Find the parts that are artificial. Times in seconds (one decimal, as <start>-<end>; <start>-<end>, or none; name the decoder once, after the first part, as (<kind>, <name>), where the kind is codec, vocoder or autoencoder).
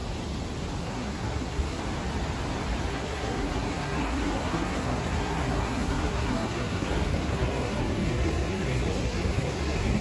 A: 0.8-1.8 (codec, SNAC); 2.9-10.0